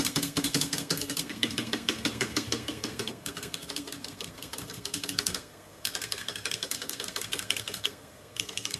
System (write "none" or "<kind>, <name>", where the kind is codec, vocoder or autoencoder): codec, SNAC